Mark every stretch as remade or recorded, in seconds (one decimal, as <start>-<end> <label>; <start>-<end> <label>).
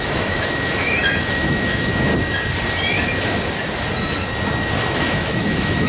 0.0-2.1 remade; 2.1-4.8 recorded; 4.8-5.9 remade